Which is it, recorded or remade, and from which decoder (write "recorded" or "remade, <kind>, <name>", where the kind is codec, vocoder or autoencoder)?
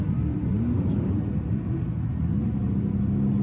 recorded